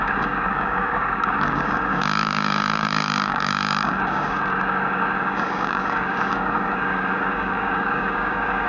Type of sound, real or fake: fake